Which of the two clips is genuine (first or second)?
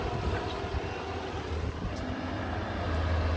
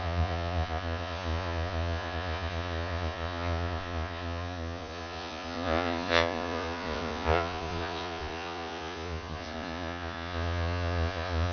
first